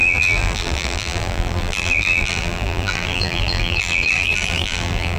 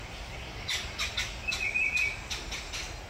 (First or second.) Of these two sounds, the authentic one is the second